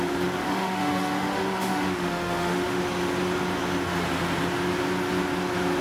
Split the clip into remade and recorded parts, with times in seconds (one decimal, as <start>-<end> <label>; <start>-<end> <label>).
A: 0.0-0.4 recorded; 0.4-2.8 remade; 2.8-5.8 recorded